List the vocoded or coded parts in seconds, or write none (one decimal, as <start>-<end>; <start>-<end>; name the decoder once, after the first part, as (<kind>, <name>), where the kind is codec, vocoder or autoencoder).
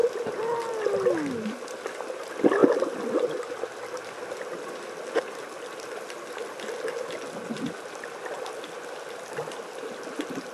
none